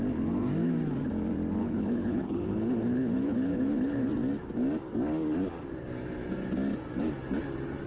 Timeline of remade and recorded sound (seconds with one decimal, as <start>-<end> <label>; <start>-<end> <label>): 0.0-1.6 recorded; 1.6-4.1 remade; 4.1-7.9 recorded